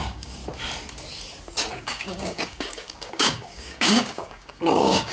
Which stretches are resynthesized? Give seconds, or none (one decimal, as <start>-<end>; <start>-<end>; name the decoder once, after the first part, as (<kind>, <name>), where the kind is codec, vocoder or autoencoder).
0.0-0.4 (codec, DAC); 1.7-5.1